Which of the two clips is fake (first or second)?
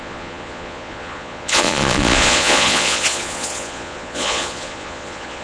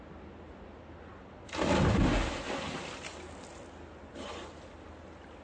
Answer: first